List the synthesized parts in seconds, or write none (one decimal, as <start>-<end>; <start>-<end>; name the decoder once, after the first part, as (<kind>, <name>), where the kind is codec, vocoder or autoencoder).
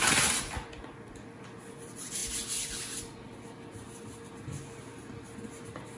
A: none